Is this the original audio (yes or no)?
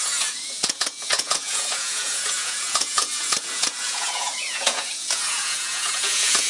no